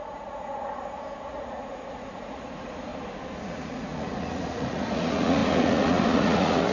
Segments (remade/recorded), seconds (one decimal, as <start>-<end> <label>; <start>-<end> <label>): 0.0-2.9 remade; 2.9-3.4 recorded; 3.4-6.7 remade